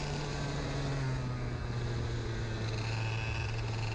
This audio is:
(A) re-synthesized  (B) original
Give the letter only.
B